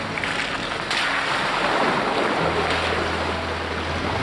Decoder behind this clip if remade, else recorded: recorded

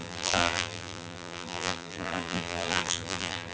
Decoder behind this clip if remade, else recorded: remade, vocoder, BigVGAN v2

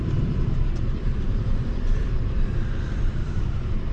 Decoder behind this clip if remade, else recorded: remade, vocoder, BigVGAN v2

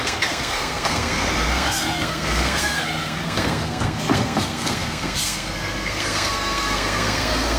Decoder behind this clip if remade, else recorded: remade, codec, SNAC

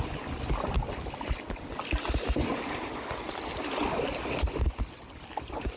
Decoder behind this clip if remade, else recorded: recorded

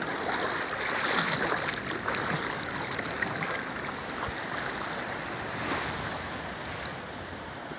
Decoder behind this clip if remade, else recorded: recorded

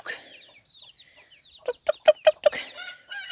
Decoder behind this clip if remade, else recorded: recorded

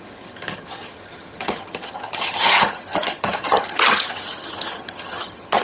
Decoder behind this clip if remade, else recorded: remade, vocoder, HiFi-GAN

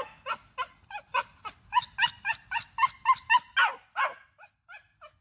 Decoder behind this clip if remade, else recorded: recorded